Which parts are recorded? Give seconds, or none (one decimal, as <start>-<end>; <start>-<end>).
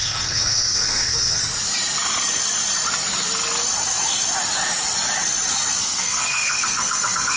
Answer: 1.4-5.8